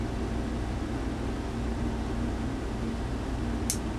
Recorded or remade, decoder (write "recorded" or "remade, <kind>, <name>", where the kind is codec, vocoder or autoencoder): recorded